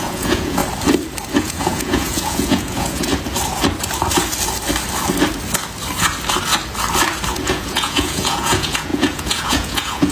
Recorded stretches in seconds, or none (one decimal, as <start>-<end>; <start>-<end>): 0.6-1.4; 3.1-7.3